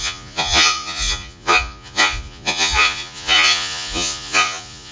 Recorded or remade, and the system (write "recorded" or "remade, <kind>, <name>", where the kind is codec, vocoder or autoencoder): remade, vocoder, Vocos